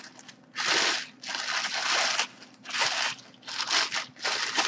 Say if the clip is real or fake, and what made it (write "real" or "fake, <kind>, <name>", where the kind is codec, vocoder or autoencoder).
real